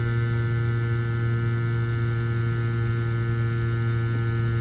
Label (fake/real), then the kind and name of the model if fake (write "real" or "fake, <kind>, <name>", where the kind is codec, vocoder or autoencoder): real